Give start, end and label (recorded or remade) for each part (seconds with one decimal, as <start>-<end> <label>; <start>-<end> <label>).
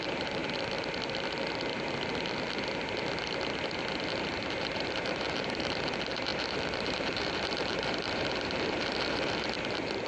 0.0-0.4 remade; 0.4-4.2 recorded; 4.2-10.1 remade